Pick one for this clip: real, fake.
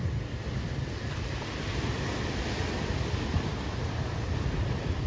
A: real